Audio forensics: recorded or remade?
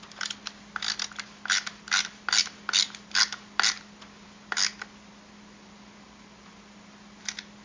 recorded